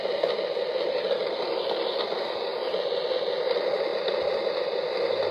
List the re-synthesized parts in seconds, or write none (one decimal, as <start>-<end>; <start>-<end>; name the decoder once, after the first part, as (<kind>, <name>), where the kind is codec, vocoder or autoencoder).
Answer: none